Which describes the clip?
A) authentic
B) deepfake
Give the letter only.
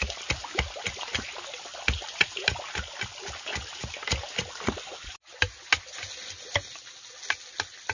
A